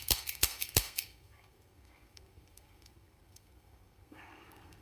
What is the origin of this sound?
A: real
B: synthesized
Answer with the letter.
B